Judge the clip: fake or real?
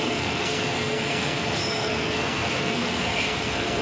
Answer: fake